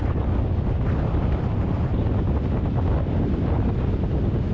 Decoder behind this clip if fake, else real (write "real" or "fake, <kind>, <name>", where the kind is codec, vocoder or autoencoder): real